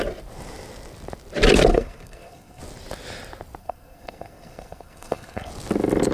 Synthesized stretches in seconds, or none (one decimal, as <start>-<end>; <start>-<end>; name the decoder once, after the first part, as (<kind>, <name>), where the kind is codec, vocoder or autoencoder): 1.7-2.6 (codec, SNAC); 3.6-5.5